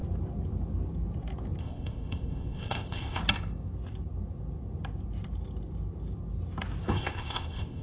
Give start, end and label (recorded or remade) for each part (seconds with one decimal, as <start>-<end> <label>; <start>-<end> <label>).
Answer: 0.0-1.6 recorded; 1.6-3.2 remade; 3.2-6.9 recorded; 6.9-7.8 remade